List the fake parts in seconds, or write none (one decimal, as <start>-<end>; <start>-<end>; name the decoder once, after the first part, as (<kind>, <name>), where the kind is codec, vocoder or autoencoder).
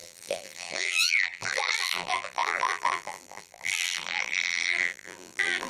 0.0-5.7 (vocoder, BigVGAN v2)